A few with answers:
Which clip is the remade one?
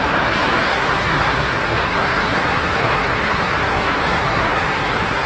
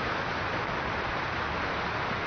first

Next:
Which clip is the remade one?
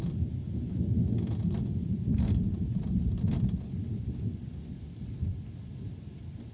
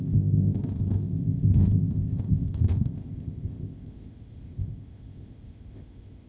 second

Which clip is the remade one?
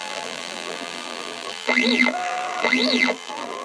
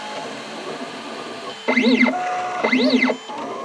first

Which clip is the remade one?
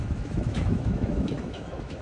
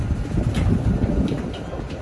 first